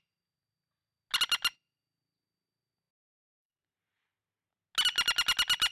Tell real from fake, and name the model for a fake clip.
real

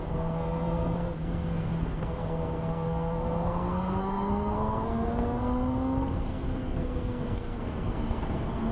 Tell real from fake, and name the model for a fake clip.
fake, codec, SNAC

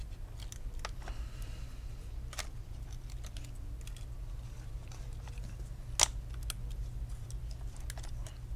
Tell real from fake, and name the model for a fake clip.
real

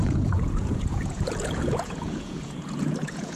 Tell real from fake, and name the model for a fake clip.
fake, vocoder, Vocos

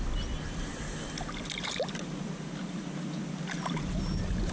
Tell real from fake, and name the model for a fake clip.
real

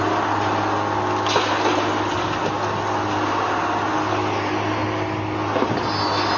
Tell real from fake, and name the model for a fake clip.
real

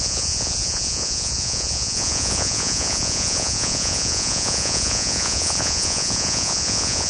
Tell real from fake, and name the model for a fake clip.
fake, vocoder, Vocos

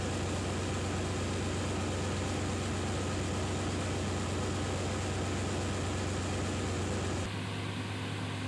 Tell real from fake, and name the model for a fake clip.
real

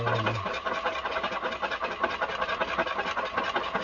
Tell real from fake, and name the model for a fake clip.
real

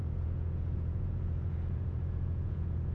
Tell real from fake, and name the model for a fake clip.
fake, vocoder, Vocos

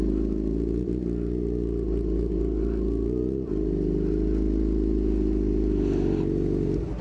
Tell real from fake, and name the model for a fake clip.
real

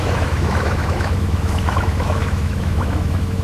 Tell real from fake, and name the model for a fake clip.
fake, autoencoder, DAC-VAE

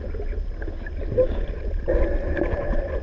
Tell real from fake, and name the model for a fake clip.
real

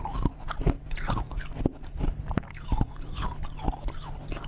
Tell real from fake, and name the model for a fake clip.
real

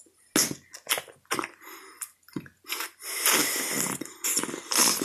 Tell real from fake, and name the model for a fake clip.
real